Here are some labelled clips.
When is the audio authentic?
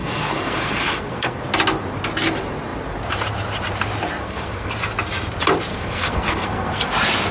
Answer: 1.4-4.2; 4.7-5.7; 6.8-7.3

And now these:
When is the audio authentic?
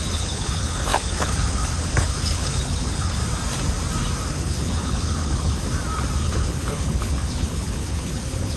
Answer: 3.2-4.3; 5.6-6.2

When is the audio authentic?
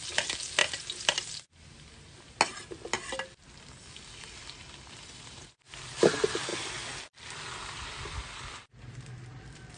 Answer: 0.0-9.8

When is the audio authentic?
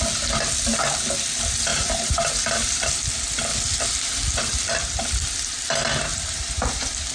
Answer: 0.0-1.7; 2.9-6.1